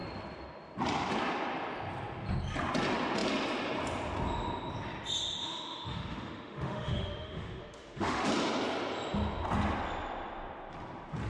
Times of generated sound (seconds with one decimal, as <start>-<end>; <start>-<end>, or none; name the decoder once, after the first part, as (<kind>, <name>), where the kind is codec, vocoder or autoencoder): 5.4-8.3 (autoencoder, DAC-VAE)